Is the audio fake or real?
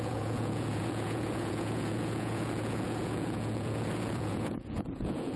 fake